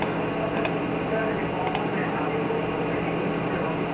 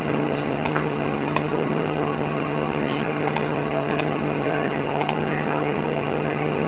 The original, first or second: first